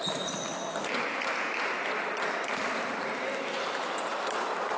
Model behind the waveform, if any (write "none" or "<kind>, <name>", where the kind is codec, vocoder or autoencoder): none